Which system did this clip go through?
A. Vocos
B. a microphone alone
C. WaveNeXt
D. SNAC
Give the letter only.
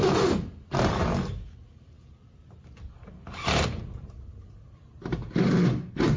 B